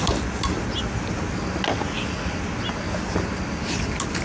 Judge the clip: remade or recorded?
recorded